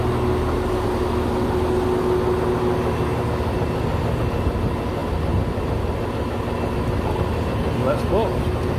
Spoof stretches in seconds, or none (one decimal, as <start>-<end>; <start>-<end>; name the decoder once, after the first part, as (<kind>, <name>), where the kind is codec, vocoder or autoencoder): none